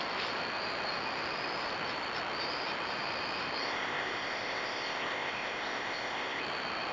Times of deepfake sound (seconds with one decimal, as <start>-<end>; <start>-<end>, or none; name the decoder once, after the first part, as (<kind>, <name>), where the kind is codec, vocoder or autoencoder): 3.6-6.4 (codec, ZipCodec)